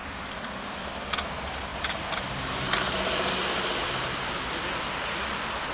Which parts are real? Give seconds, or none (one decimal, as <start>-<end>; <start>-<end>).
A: 1.0-1.7; 4.9-5.7